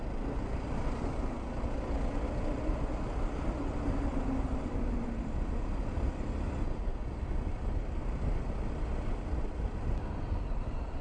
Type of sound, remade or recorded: recorded